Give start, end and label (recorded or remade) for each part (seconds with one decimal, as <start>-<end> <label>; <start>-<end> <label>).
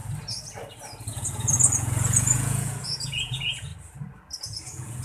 0.0-1.1 recorded; 1.1-3.7 remade; 3.7-4.4 recorded; 4.4-5.0 remade